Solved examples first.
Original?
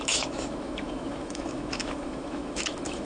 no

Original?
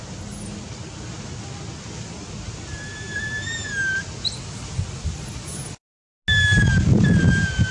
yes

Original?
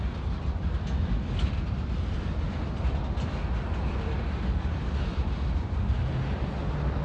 yes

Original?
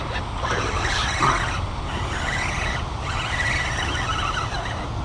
yes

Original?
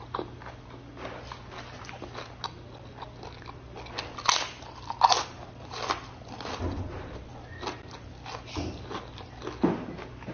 yes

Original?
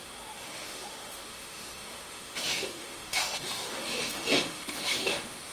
no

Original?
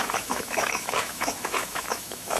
no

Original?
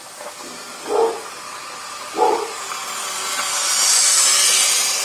yes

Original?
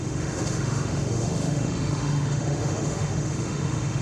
no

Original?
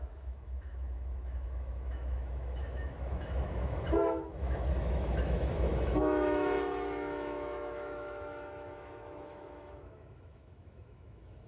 no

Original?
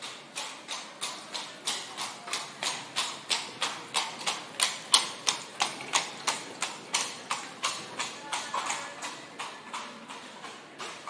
yes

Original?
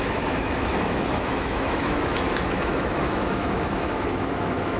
no